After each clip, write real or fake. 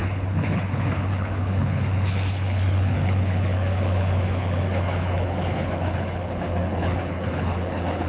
fake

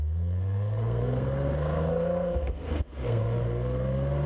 fake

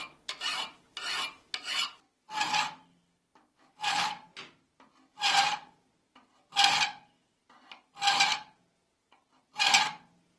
real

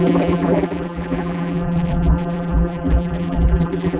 fake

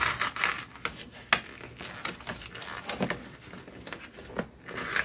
real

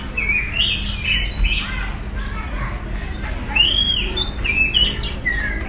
real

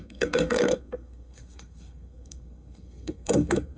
fake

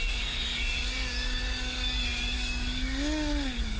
fake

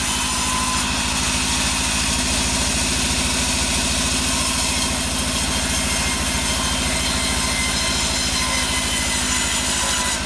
real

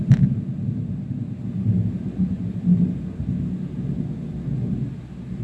real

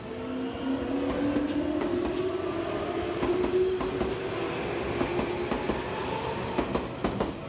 real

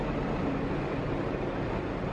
real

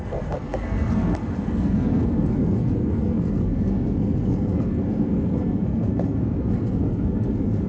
fake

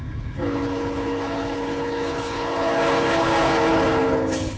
fake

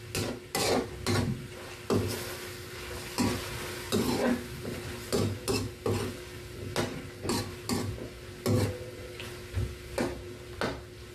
real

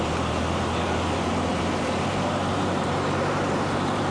fake